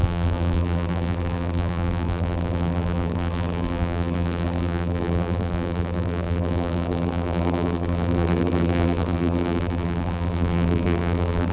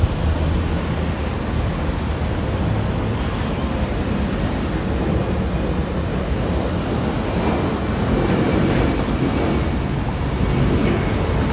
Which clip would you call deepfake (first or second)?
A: first